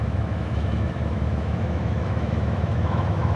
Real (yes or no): no